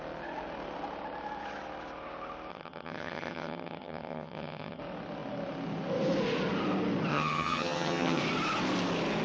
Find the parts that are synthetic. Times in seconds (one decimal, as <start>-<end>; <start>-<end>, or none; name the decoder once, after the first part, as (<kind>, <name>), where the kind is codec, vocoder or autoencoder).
2.5-4.8 (vocoder, HiFi-GAN); 7.1-8.2